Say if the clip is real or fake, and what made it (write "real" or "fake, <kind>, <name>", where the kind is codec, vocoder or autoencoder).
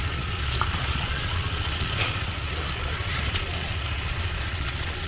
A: fake, vocoder, Vocos